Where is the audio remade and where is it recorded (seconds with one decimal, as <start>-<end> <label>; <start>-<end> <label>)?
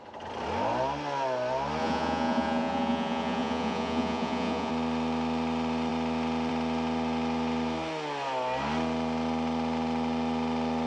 0.0-1.8 recorded; 1.8-4.7 remade; 4.7-10.9 recorded